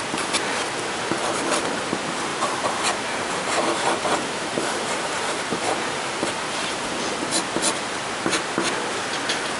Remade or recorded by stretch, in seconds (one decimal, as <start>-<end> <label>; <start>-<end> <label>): 0.0-2.3 recorded; 2.3-7.0 remade; 7.0-9.6 recorded